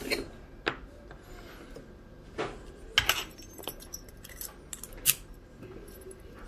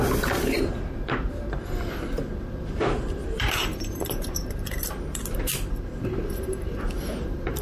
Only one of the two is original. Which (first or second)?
first